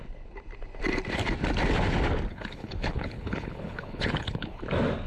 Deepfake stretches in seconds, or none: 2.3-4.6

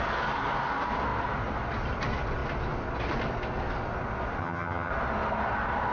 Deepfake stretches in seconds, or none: 4.4-4.9